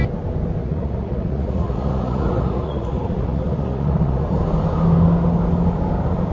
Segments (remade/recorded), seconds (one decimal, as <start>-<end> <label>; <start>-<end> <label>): 0.0-0.6 recorded; 0.6-4.4 remade; 4.4-6.3 recorded